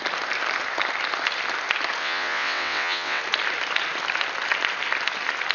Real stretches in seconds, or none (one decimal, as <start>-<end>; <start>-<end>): 0.0-2.0; 3.2-5.5